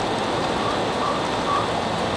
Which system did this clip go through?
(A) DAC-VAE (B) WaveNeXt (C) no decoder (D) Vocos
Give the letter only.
C